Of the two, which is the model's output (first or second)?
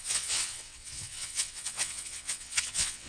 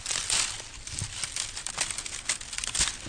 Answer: first